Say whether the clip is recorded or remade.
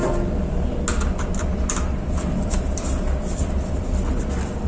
recorded